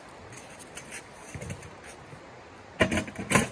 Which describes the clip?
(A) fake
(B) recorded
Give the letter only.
B